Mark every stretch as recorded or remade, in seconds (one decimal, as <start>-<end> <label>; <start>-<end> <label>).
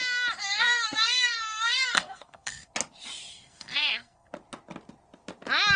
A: 0.0-0.4 recorded; 0.4-2.7 remade; 2.7-3.3 recorded; 3.3-4.3 remade; 4.3-5.8 recorded